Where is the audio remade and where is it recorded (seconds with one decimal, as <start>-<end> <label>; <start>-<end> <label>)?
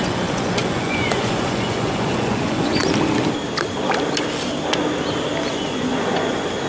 0.0-2.8 remade; 2.8-5.5 recorded; 5.5-6.7 remade